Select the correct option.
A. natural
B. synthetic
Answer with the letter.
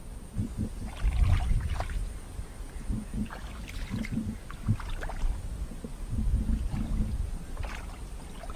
A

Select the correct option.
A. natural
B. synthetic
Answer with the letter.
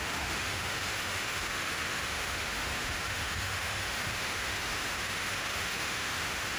B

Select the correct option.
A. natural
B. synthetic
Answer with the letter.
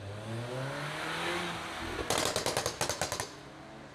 A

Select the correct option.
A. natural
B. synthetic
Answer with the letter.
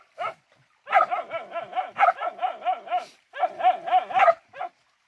A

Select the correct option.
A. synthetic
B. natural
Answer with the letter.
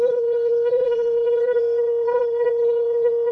A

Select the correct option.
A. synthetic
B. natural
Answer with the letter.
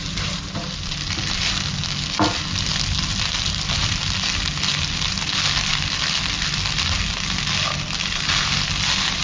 B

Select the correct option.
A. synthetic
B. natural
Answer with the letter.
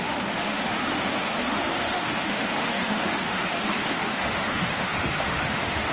A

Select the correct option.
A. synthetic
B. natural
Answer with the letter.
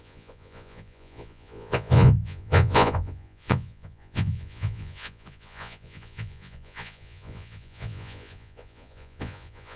A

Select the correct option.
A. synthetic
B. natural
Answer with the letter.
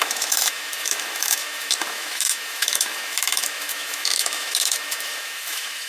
A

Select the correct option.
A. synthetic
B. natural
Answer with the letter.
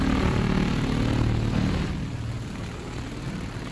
B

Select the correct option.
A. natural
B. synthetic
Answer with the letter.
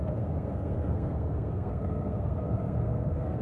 B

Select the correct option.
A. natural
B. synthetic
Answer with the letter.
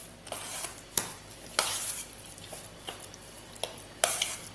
A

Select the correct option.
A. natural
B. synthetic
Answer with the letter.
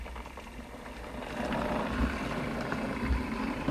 A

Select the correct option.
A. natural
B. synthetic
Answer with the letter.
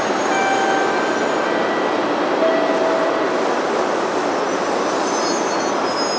A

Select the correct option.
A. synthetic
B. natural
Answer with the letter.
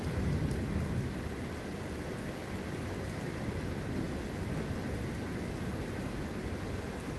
B